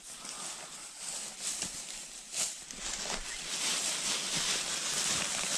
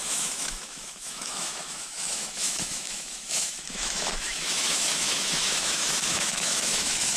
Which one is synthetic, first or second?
second